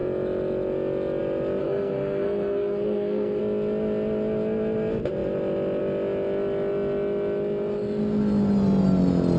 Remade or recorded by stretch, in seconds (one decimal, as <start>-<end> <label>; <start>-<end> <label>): 0.0-1.6 recorded; 1.6-3.4 remade; 3.4-9.4 recorded